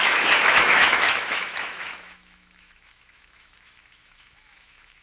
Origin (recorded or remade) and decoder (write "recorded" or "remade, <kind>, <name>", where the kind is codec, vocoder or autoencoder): remade, autoencoder, DAC-VAE